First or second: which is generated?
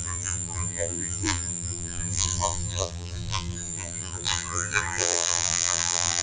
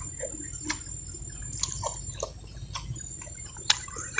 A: first